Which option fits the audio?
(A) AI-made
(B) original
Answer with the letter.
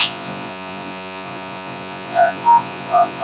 A